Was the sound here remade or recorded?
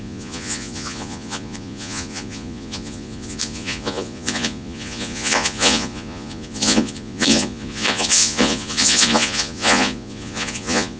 remade